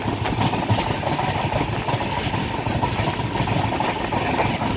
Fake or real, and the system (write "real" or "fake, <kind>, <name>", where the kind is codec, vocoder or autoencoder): real